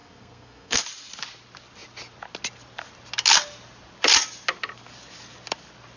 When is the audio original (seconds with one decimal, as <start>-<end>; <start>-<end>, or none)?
0.8-6.0